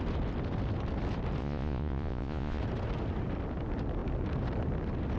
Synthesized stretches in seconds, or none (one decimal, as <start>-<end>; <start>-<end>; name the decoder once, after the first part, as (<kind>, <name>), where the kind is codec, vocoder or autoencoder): 1.4-2.6 (vocoder, Vocos)

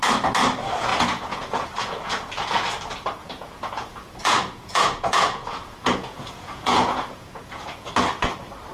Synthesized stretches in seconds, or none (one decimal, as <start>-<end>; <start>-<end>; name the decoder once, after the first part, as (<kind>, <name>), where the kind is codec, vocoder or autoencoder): 0.9-2.3 (vocoder, Vocos); 3.2-7.9

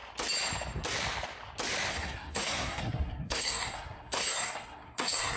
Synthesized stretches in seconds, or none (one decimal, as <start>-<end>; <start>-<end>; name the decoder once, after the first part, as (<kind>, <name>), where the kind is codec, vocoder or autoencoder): 1.9-5.4 (codec, SNAC)

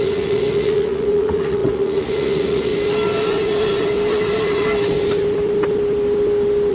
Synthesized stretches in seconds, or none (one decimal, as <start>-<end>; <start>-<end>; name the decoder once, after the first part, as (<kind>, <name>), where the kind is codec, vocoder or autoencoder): 0.0-2.7 (vocoder, Vocos)

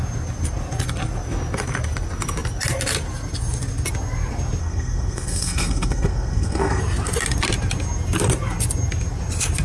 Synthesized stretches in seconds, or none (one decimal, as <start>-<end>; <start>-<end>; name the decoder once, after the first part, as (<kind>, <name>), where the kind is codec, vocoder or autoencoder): 4.6-6.8 (codec, SNAC)

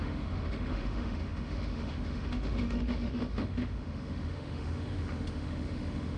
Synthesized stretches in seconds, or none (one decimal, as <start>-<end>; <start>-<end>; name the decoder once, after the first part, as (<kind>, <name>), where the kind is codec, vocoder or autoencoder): 0.0-6.2 (autoencoder, DAC-VAE)

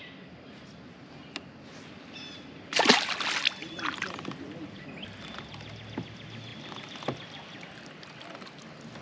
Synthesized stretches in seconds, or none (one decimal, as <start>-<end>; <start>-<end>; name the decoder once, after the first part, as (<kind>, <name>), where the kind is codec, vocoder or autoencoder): 3.6-4.8 (vocoder, BigVGAN v2); 6.5-7.3

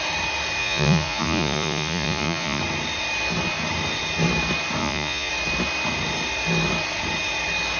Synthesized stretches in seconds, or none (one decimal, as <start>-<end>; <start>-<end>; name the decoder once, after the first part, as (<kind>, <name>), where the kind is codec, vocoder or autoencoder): 0.6-2.6 (vocoder, Vocos); 4.8-5.3